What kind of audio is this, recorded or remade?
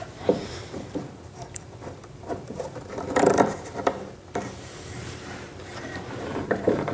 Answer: remade